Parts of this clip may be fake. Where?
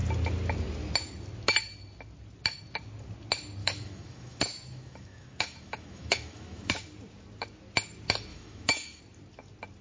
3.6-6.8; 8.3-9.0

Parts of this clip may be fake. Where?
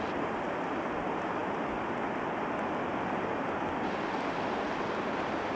none